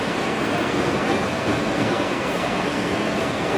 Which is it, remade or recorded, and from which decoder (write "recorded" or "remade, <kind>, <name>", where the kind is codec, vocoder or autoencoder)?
remade, codec, SNAC